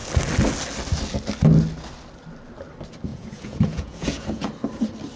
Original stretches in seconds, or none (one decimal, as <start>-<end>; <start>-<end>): 0.0-3.1; 4.5-5.2